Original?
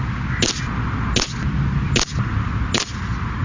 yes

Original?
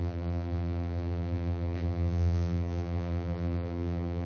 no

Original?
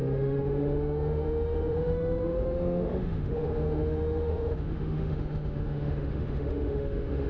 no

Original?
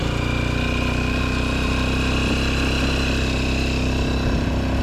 yes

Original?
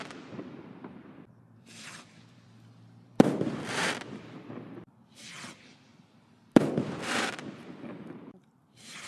no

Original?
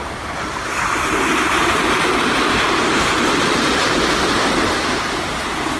yes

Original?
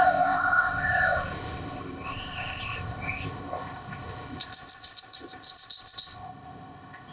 no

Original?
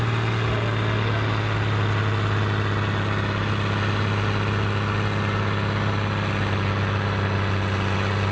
yes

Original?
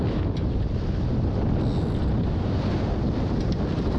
yes